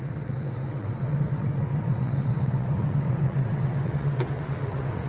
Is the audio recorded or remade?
remade